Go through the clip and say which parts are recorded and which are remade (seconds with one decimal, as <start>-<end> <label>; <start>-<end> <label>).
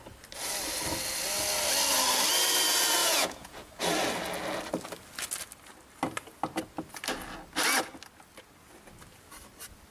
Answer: 0.0-3.0 recorded; 3.0-3.7 remade; 3.7-9.9 recorded